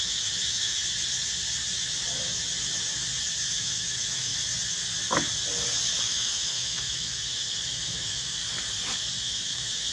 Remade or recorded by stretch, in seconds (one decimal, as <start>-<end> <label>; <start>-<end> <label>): 0.0-0.8 remade; 0.8-3.5 recorded; 3.5-4.3 remade; 4.3-6.0 recorded; 6.0-8.4 remade; 8.4-9.2 recorded; 9.2-9.9 remade